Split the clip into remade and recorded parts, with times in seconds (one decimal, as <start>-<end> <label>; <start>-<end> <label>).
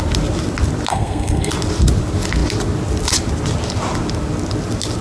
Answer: 0.0-0.9 recorded; 0.9-1.5 remade; 1.5-5.0 recorded